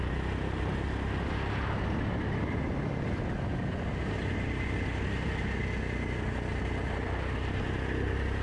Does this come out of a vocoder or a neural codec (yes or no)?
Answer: no